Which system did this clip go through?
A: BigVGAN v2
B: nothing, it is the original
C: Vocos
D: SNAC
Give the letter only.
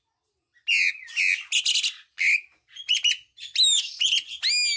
B